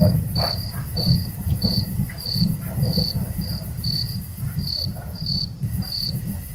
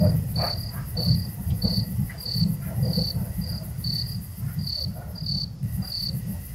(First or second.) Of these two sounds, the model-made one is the first